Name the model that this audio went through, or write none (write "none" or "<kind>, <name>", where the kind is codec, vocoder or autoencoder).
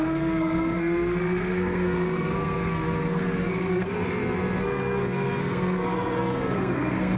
codec, SNAC